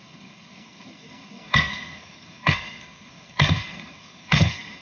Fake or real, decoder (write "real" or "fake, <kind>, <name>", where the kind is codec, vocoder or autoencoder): fake, codec, SNAC